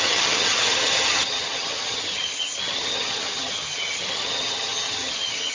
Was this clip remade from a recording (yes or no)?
yes